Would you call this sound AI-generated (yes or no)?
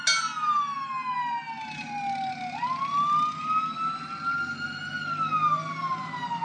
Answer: no